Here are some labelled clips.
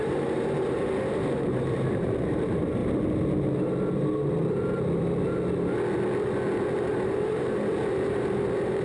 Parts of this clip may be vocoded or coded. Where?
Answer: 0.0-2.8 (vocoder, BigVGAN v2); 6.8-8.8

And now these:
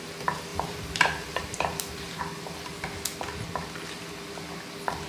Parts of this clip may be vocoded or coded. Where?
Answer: 0.5-2.2 (vocoder, BigVGAN v2)

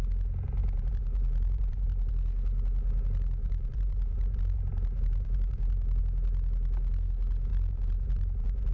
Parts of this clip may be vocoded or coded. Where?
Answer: 0.6-2.1 (vocoder, BigVGAN v2); 3.4-6.0; 7.5-8.7

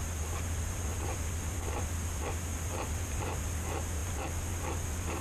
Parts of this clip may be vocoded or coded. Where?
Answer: 0.0-1.9 (vocoder, BigVGAN v2); 2.5-3.4

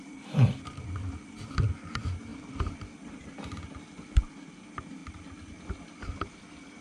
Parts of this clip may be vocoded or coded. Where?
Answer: 2.3-2.9 (vocoder, BigVGAN v2); 5.0-6.0

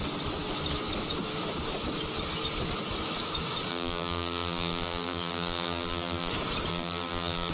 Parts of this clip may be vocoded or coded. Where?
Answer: 3.7-6.3 (vocoder, BigVGAN v2); 6.7-7.5

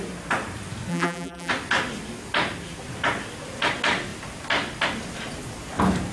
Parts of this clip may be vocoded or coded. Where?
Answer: 0.9-1.5 (vocoder, BigVGAN v2)